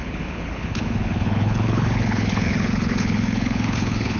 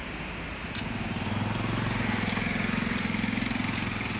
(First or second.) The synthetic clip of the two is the first